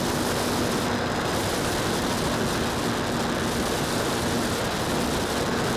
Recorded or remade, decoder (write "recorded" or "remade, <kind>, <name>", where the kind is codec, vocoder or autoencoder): recorded